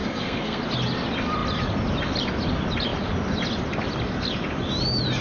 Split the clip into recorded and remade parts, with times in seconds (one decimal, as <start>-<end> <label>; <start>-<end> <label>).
0.0-0.6 remade; 0.6-5.2 recorded